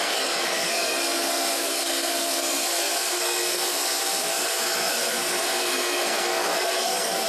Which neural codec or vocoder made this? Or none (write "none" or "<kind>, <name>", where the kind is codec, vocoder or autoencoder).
codec, SNAC